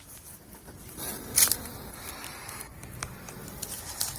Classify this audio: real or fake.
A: fake